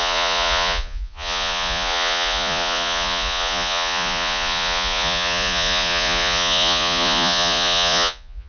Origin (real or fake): fake